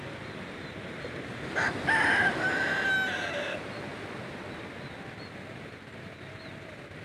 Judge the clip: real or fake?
real